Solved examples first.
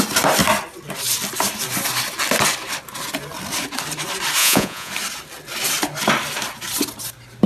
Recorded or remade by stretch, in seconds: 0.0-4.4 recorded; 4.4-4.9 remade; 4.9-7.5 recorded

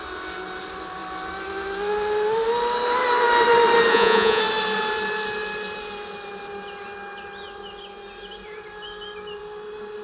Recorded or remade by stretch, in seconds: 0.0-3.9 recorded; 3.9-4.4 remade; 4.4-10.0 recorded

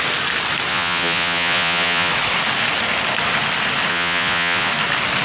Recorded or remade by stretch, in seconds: 0.0-0.7 recorded; 0.7-2.1 remade; 2.1-3.9 recorded; 3.9-4.7 remade; 4.7-5.2 recorded